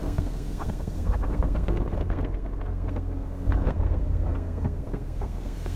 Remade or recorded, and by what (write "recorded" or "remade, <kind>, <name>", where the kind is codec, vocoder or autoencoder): remade, codec, SNAC